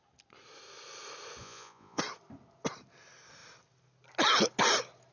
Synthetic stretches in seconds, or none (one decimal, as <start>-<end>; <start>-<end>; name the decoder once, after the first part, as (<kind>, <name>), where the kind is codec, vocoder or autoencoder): 1.4-2.0 (vocoder, Vocos)